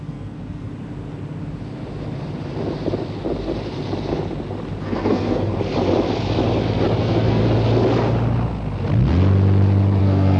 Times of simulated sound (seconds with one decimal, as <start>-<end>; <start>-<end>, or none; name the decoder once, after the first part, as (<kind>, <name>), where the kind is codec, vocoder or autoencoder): 0.0-0.7 (codec, SNAC); 4.8-5.5; 7.0-7.4; 10.0-10.4